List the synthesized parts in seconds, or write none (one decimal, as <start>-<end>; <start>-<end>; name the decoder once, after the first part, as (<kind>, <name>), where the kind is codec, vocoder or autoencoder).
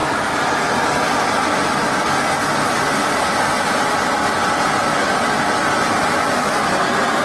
none